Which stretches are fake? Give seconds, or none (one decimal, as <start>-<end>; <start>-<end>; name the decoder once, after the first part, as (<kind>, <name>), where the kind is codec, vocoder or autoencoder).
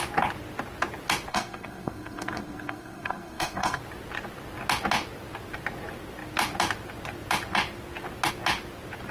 1.3-3.8 (codec, SNAC)